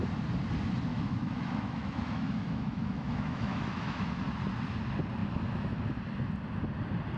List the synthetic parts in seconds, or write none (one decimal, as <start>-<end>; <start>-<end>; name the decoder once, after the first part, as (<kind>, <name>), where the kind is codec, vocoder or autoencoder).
0.9-4.2 (autoencoder, DAC-VAE); 5.2-5.8